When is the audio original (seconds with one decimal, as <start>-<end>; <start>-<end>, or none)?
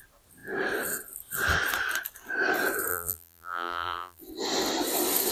0.0-2.9; 4.2-5.3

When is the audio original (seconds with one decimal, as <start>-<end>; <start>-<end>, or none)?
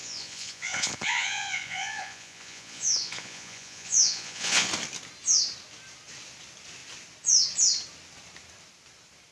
4.7-9.3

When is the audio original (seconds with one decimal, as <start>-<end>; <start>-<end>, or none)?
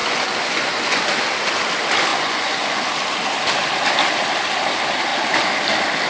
1.0-2.1; 2.8-6.1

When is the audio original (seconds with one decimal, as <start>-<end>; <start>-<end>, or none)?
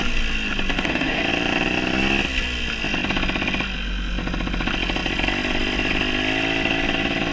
0.0-0.7; 1.2-7.3